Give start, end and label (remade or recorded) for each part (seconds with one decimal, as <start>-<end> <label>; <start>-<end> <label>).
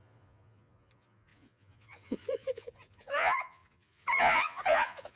0.0-5.2 remade